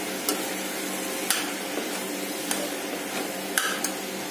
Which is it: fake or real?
real